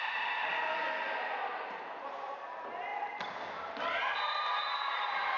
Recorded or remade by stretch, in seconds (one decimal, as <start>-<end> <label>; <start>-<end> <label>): 0.0-5.4 recorded